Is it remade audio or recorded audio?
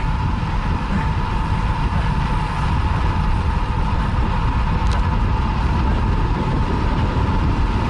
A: recorded